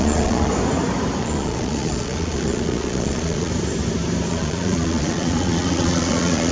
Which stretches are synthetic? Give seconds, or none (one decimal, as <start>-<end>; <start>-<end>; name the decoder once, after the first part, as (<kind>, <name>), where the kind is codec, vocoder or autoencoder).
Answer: 0.0-0.5 (vocoder, Vocos); 1.2-3.5; 4.3-6.5